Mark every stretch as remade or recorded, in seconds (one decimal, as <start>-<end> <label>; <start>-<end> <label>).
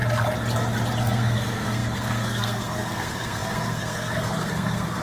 0.0-1.0 recorded; 1.0-5.0 remade